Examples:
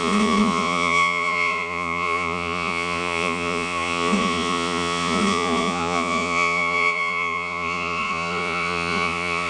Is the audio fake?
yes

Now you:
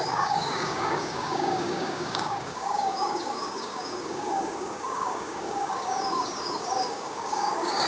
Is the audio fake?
yes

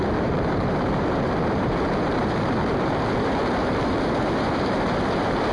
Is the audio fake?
yes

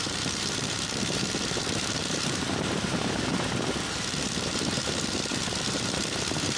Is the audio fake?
yes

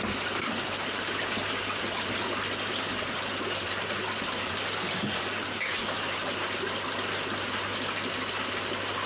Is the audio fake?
no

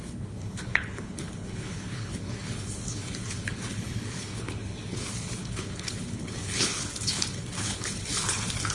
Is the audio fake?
yes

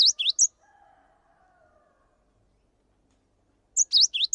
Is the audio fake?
no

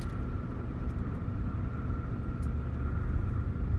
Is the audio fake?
no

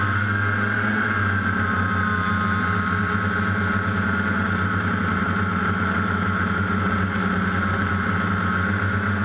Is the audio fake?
no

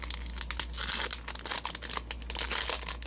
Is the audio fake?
no